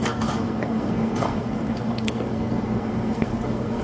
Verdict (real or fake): fake